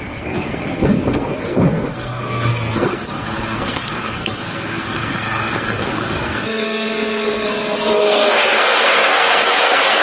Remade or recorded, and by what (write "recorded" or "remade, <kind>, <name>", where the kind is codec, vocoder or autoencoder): remade, codec, SNAC